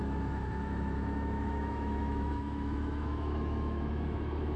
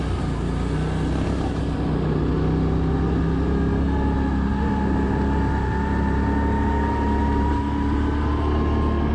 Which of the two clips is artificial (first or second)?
first